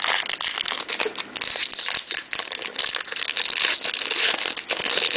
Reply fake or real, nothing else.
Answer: real